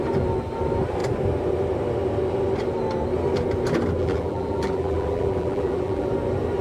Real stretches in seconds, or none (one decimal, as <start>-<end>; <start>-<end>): 0.0-4.0; 6.1-6.6